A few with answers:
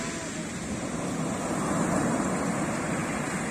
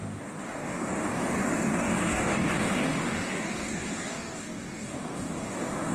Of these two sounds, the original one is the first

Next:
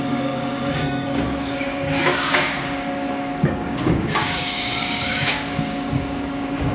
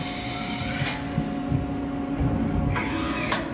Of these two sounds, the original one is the second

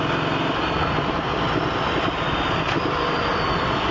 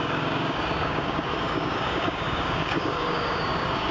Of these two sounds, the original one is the first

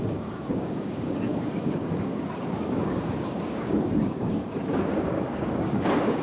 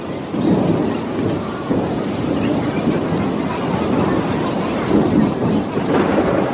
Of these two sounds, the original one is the second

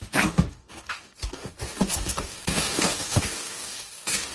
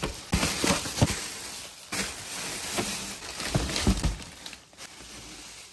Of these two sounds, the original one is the second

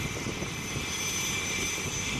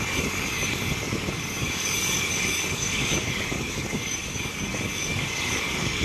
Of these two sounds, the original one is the first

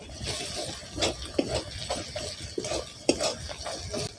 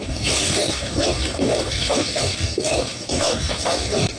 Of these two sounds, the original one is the first